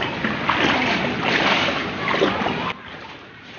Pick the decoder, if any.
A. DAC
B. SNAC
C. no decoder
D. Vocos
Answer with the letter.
C